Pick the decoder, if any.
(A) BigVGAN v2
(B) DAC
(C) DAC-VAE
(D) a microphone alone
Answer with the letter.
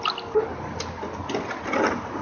D